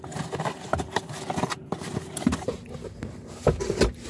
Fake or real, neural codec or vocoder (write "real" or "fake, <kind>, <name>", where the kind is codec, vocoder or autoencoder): real